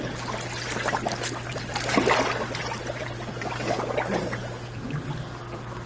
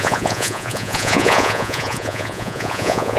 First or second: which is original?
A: first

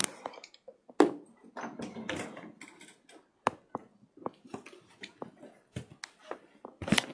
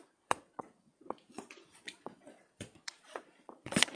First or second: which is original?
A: first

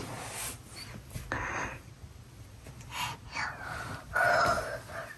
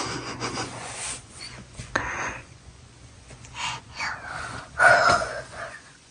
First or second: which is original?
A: first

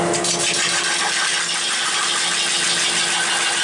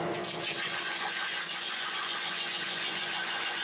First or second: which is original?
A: first